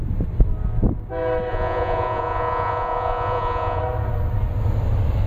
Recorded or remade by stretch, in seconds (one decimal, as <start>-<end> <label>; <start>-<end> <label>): 0.0-1.5 recorded; 1.5-3.8 remade; 3.8-5.3 recorded